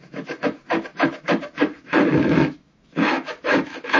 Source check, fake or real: fake